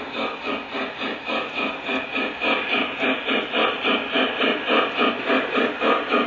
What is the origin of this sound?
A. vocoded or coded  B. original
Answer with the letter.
B